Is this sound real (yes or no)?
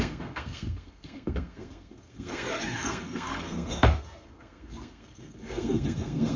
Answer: no